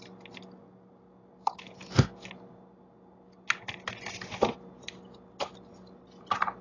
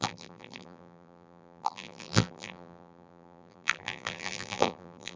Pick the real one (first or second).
first